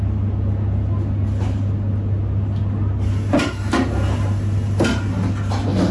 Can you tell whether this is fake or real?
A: real